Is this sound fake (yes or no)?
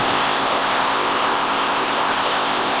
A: yes